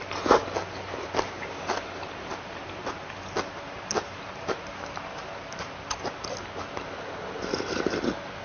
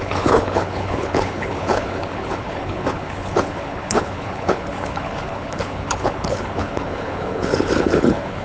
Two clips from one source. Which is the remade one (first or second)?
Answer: second